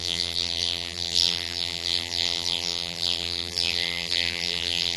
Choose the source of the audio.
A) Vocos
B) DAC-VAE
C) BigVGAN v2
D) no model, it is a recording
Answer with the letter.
C